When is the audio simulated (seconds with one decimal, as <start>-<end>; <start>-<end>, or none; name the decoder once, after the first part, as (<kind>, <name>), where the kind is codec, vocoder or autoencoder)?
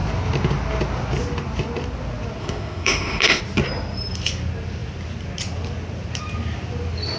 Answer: 2.4-3.4 (autoencoder, DAC-VAE)